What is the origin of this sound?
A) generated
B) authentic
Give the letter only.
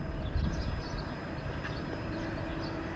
B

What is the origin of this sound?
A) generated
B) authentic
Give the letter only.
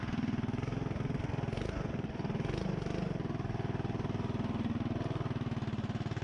B